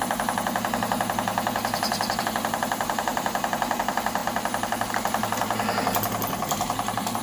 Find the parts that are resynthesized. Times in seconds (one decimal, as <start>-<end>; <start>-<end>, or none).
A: 1.3-2.2